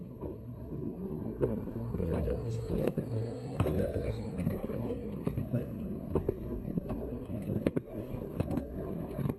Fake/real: fake